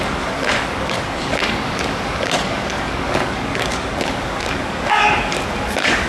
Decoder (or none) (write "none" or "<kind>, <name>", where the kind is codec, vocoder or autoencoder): codec, DAC